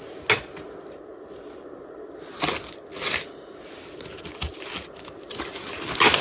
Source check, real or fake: real